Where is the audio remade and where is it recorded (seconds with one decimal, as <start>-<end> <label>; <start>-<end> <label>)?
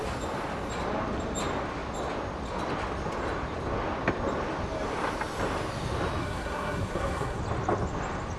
0.0-6.2 recorded; 6.2-7.4 remade; 7.4-8.4 recorded